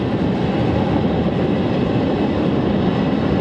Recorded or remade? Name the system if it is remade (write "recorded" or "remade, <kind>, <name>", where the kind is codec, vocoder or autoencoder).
recorded